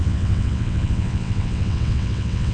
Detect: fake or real fake